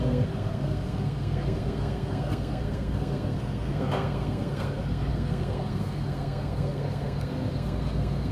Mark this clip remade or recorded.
remade